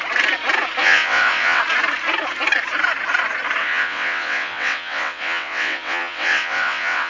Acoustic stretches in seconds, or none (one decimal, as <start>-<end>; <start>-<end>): 0.0-0.8; 1.6-3.6